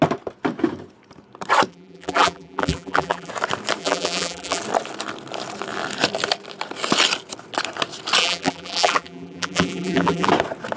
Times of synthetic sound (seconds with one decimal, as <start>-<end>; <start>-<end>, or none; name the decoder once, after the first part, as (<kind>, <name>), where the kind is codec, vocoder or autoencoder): 1.7-3.3 (vocoder, BigVGAN v2); 3.8-4.6; 8.2-10.3